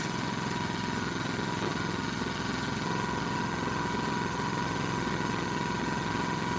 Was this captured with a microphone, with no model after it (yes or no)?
no